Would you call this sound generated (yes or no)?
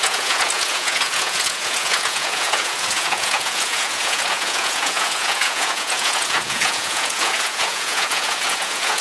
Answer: yes